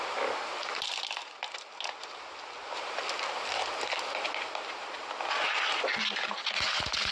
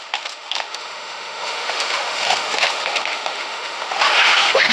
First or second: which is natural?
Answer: first